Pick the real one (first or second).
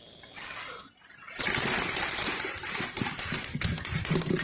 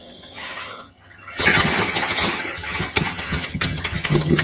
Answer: first